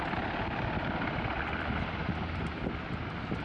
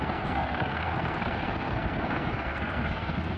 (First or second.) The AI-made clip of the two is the second